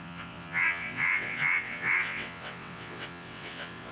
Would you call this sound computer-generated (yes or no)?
yes